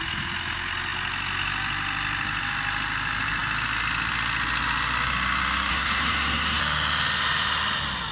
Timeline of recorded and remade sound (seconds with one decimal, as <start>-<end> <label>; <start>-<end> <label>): 0.0-5.7 recorded; 5.7-6.6 remade; 6.6-8.1 recorded